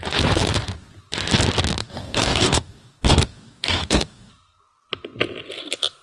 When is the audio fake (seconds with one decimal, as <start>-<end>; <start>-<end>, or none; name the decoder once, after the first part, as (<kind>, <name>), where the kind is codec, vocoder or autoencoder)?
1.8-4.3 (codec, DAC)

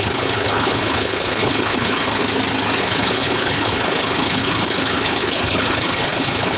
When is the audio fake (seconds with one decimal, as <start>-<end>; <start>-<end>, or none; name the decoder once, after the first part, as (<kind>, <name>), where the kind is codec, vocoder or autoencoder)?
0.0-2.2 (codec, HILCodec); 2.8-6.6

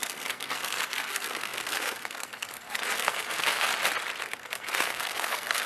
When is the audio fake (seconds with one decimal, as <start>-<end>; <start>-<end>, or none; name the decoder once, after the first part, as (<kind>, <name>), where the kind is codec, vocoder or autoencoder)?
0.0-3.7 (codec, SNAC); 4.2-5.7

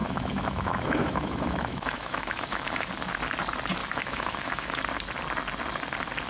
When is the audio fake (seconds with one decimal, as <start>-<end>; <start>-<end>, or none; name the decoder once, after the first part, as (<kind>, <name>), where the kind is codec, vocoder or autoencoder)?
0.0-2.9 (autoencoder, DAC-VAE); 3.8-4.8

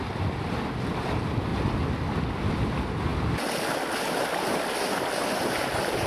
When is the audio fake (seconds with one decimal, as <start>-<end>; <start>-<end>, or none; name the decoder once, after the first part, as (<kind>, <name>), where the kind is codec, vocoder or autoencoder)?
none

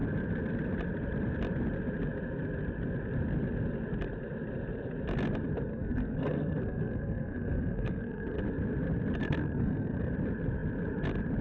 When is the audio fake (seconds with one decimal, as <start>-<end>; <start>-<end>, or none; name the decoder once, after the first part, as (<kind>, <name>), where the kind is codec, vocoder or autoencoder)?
5.7-8.4 (codec, SNAC); 9.2-10.1

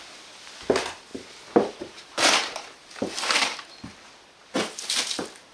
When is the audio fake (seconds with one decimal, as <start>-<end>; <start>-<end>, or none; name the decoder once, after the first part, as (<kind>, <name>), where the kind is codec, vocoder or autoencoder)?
none